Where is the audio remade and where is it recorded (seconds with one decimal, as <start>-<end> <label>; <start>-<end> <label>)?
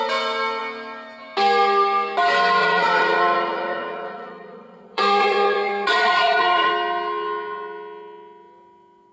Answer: 0.0-2.6 recorded; 2.6-6.7 remade; 6.7-9.1 recorded